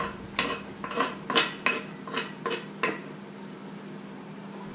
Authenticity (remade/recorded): recorded